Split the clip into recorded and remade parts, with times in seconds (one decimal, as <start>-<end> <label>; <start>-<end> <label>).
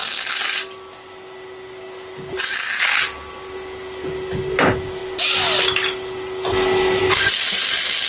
0.0-8.1 recorded